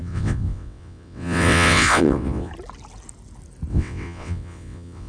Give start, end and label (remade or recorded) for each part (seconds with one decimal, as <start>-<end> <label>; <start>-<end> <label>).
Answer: 0.0-2.5 remade; 2.5-3.7 recorded; 3.7-5.1 remade